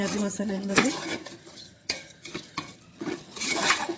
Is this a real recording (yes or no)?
no